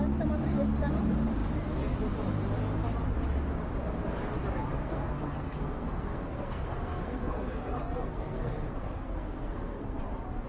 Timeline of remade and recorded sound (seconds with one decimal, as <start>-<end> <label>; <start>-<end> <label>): 0.0-4.8 recorded; 4.8-10.0 remade; 10.0-10.5 recorded